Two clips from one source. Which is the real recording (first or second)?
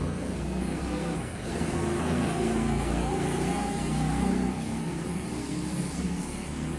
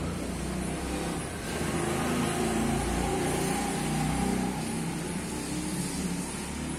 second